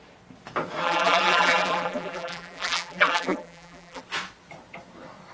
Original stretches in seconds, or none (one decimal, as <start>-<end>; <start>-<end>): 0.0-0.8; 4.0-5.3